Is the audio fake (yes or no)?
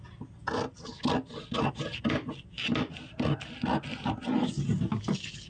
no